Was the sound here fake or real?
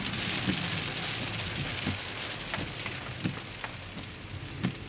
real